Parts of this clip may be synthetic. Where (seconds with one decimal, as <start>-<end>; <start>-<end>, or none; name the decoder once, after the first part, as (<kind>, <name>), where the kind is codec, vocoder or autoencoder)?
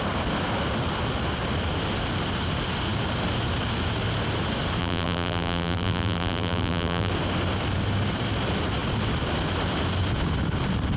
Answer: 4.8-7.1 (vocoder, BigVGAN v2)